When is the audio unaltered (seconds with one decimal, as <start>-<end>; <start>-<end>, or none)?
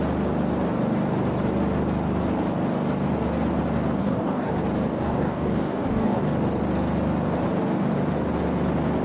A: 0.0-4.0; 4.5-4.9; 6.2-9.0